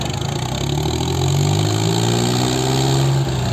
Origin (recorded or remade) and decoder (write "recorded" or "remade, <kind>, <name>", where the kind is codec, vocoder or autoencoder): recorded